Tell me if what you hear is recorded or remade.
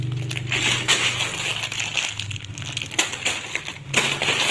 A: recorded